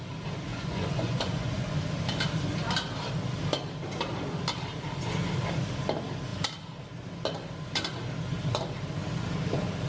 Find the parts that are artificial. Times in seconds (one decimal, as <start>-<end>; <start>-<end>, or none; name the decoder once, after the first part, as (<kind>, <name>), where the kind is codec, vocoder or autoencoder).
0.5-1.8 (vocoder, Vocos)